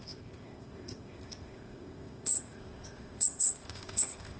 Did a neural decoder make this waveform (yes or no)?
yes